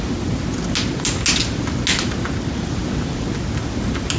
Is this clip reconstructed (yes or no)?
no